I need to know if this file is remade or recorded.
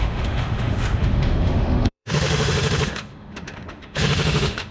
remade